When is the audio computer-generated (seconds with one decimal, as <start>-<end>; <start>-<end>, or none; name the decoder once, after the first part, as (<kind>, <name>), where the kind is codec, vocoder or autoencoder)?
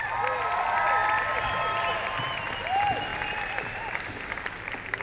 none